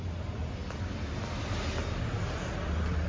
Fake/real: real